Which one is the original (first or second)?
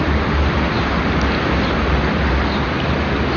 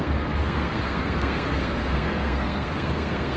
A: first